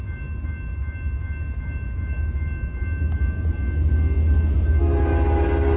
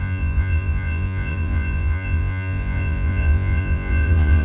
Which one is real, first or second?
first